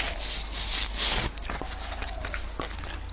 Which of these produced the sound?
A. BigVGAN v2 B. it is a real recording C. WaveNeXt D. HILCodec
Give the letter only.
B